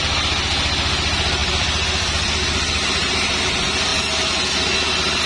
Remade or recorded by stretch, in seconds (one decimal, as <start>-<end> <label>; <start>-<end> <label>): 0.0-1.4 recorded; 1.4-3.4 remade; 3.4-5.3 recorded